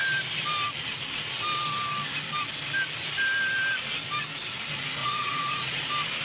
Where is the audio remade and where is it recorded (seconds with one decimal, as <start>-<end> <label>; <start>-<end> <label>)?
0.0-5.0 recorded; 5.0-5.8 remade; 5.8-6.2 recorded